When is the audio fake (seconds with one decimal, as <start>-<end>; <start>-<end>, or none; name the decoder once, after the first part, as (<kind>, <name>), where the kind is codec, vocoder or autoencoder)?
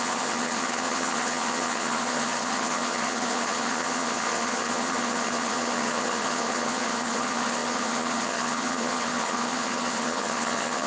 0.0-10.9 (vocoder, HiFi-GAN)